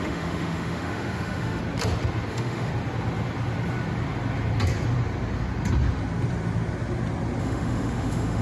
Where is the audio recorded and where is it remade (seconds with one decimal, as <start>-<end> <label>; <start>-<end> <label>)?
0.0-1.6 remade; 1.6-2.3 recorded; 2.3-2.7 remade; 2.7-7.4 recorded; 7.4-8.4 remade